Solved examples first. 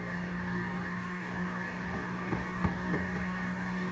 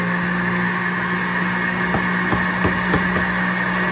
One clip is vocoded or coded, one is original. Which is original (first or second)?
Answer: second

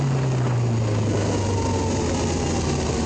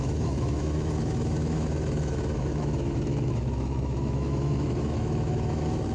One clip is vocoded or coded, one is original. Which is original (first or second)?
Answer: first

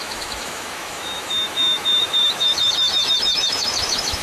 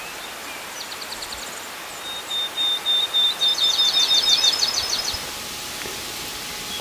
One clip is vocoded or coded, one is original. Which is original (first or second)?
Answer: second